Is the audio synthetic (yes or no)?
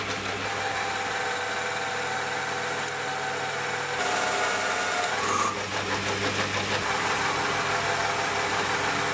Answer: no